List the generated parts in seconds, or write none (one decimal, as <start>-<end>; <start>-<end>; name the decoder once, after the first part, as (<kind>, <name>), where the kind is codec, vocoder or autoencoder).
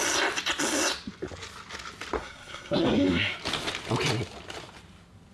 2.2-3.3 (codec, SNAC)